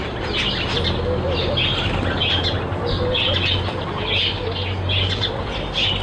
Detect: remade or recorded recorded